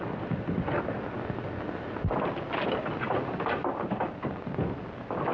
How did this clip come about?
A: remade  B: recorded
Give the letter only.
B